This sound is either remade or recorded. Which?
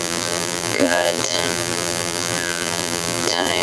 remade